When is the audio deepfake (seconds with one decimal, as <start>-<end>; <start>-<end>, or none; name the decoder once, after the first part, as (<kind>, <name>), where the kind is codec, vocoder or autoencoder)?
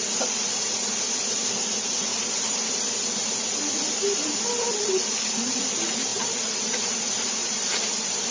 2.1-2.7 (vocoder, BigVGAN v2); 6.1-7.0; 7.4-8.3